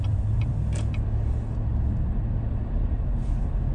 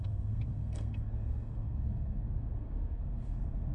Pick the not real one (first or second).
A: second